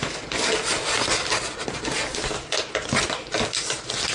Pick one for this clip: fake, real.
real